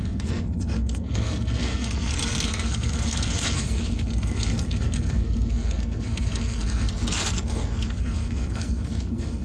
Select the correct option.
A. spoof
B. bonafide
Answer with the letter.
A